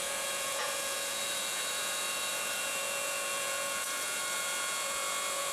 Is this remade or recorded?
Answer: remade